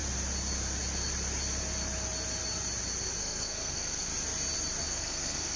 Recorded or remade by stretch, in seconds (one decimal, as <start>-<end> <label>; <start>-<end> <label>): 0.0-3.2 recorded; 3.2-4.1 remade; 4.1-4.9 recorded; 4.9-5.6 remade